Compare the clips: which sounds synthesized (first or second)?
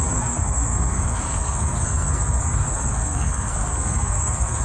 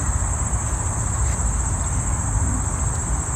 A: first